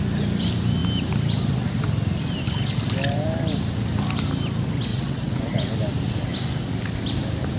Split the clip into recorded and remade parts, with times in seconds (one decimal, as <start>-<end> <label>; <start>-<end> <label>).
0.0-4.9 recorded; 4.9-5.7 remade; 5.7-7.6 recorded

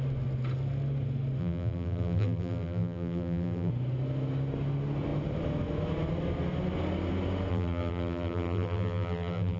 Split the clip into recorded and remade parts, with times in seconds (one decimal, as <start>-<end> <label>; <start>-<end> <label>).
0.0-1.4 recorded; 1.4-3.7 remade; 3.7-7.5 recorded; 7.5-9.6 remade

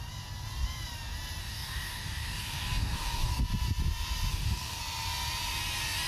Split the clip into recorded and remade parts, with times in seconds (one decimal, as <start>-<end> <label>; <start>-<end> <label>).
0.0-1.4 recorded; 1.4-3.4 remade; 3.4-4.3 recorded; 4.3-4.8 remade; 4.8-6.1 recorded

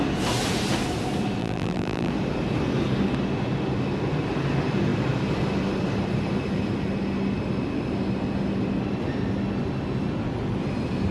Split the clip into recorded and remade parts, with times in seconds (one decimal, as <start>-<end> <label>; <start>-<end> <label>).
0.0-1.4 recorded; 1.4-2.1 remade; 2.1-11.1 recorded

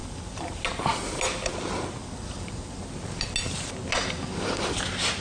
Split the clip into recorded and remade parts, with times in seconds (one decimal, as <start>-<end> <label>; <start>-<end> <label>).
0.0-0.6 remade; 0.6-2.0 recorded; 2.0-2.8 remade; 2.8-4.0 recorded; 4.0-4.6 remade; 4.6-5.2 recorded

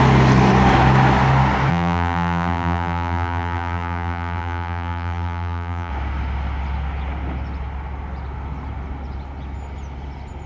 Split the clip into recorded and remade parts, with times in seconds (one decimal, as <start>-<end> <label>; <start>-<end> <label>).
0.0-1.7 recorded; 1.7-5.9 remade; 5.9-10.5 recorded

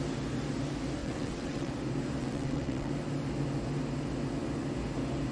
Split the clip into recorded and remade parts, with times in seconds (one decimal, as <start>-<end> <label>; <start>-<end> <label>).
0.0-1.0 recorded; 1.0-1.7 remade; 1.7-2.2 recorded; 2.2-2.9 remade; 2.9-5.3 recorded